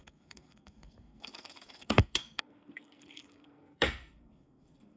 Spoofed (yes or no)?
yes